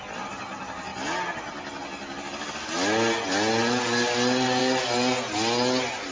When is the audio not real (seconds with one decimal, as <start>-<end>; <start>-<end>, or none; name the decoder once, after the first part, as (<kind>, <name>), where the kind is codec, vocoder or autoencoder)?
none